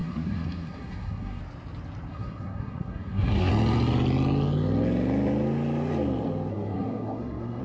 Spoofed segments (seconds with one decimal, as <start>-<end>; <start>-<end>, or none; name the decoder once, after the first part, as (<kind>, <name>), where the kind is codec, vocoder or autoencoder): 0.0-1.4 (codec, SNAC); 2.1-3.5; 6.5-7.6